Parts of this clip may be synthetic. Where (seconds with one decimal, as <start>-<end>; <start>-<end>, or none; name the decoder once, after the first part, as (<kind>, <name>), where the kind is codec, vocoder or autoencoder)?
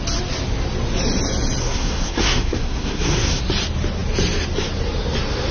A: 1.6-3.4 (codec, SNAC)